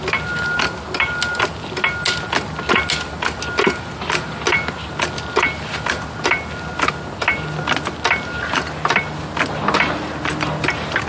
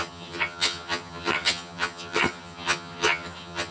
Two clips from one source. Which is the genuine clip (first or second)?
first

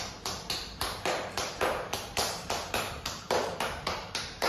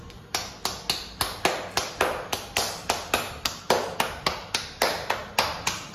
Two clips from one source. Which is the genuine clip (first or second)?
second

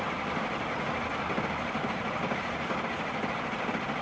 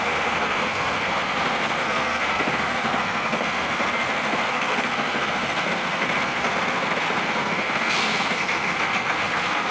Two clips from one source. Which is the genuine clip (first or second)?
first